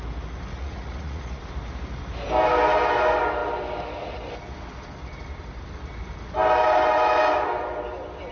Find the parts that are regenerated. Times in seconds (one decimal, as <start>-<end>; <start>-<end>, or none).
0.5-1.4